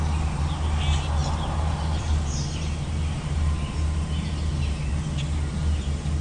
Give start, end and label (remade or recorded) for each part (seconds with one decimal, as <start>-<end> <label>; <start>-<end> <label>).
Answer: 0.0-1.2 recorded; 1.2-4.9 remade; 4.9-6.2 recorded